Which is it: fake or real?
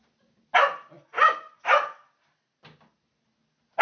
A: real